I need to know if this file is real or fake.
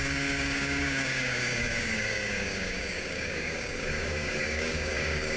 fake